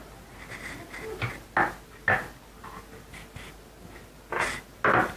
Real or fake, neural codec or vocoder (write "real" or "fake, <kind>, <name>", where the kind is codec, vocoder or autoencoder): real